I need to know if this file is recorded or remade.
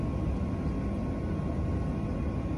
recorded